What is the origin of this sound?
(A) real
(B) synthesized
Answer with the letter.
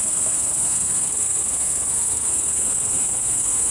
B